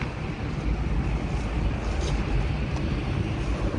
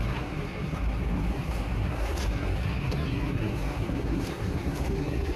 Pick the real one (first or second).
first